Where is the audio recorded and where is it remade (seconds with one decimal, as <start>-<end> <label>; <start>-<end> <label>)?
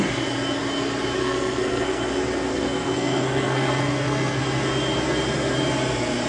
0.0-1.2 recorded; 1.2-2.1 remade; 2.1-2.5 recorded; 2.5-4.4 remade; 4.4-6.3 recorded